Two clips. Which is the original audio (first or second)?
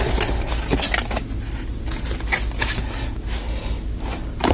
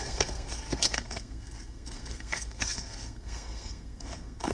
first